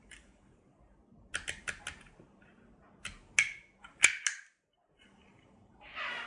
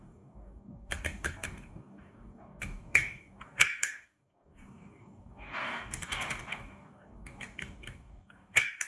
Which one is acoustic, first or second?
first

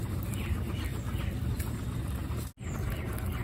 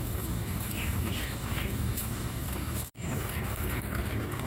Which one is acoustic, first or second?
first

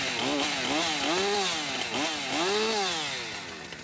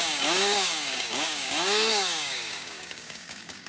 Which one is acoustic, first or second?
first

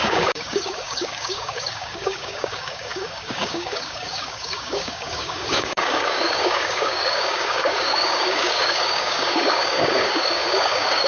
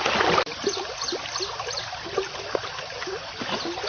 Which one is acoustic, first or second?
second